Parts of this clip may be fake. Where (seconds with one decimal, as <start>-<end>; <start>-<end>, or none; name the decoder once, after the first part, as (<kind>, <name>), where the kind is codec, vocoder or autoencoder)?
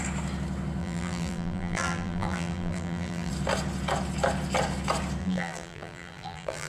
0.8-3.3 (vocoder, BigVGAN v2); 5.2-6.7